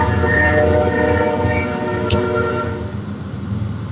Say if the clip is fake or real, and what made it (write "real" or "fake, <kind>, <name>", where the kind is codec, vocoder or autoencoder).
fake, vocoder, BigVGAN v2